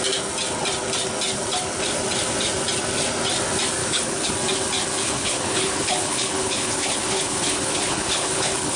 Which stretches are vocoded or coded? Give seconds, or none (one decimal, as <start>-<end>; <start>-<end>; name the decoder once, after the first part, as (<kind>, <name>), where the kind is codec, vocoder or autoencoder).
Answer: 3.8-4.3 (codec, HILCodec); 5.0-8.8